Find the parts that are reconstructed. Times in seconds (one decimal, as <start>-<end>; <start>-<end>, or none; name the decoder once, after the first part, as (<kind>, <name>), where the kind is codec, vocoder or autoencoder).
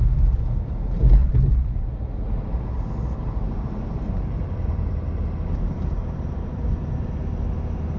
3.2-4.9 (vocoder, BigVGAN v2); 6.0-6.7